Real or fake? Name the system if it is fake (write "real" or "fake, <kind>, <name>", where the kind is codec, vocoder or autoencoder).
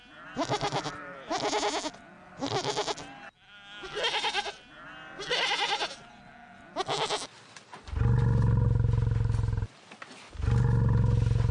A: real